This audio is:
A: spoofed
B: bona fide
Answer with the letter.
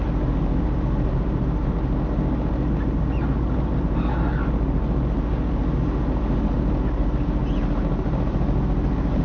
B